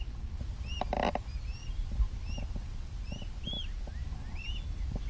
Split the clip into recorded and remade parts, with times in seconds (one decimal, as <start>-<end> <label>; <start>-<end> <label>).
0.0-5.1 recorded